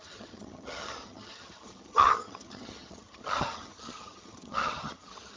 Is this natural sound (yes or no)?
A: no